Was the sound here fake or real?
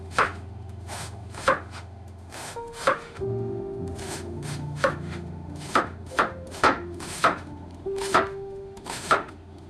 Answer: fake